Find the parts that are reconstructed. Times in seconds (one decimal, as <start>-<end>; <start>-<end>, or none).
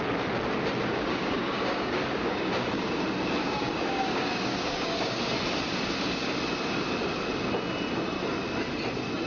0.8-3.0; 3.4-5.2